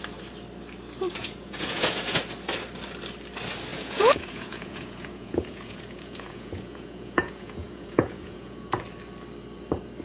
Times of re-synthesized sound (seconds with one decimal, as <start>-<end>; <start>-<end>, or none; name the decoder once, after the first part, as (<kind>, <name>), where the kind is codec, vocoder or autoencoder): 1.2-2.2 (vocoder, Vocos); 3.7-8.8